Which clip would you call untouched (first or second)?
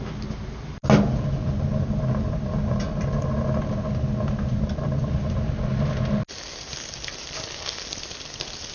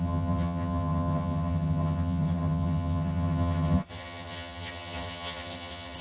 first